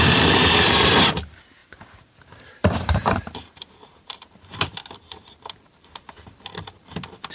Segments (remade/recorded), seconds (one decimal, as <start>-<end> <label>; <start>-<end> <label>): 0.0-1.6 recorded; 1.6-6.0 remade; 6.0-7.3 recorded